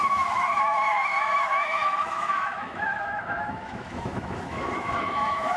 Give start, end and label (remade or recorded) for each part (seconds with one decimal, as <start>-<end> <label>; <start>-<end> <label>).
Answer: 0.0-5.6 remade